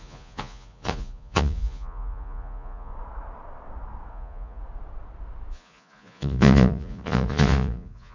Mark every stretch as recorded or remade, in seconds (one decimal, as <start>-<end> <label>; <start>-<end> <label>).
0.0-2.9 remade; 2.9-4.1 recorded; 4.1-4.6 remade; 4.6-5.5 recorded; 5.5-8.1 remade